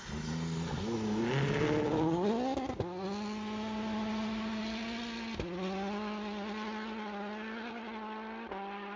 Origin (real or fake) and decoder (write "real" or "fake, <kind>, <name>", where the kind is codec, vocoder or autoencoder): real